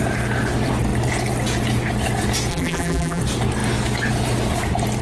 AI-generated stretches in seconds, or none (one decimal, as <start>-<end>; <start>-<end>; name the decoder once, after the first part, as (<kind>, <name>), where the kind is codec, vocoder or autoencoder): 2.5-3.2 (vocoder, BigVGAN v2)